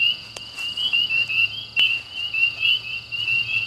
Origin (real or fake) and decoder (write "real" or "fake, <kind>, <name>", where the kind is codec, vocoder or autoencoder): fake, vocoder, Vocos